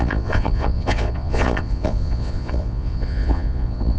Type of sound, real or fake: fake